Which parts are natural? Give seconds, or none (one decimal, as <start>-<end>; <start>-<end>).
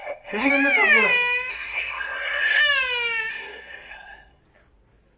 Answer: 0.5-1.5; 2.6-3.3; 4.4-5.2